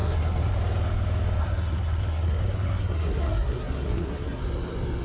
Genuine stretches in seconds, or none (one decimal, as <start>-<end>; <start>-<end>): 0.5-1.4; 4.4-5.0